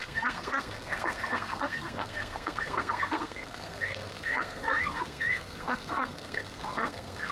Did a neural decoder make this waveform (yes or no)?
yes